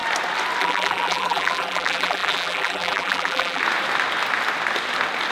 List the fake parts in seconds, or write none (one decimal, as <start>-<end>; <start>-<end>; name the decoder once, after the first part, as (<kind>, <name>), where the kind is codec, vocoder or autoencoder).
0.6-3.6 (vocoder, BigVGAN v2)